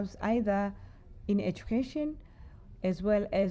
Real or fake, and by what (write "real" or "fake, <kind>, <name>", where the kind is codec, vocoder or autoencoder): fake, vocoder, BigVGAN v2